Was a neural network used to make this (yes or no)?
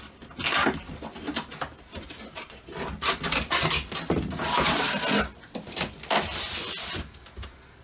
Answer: no